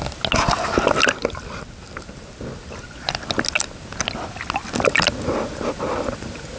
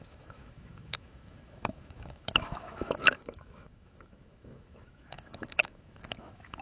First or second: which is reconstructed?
second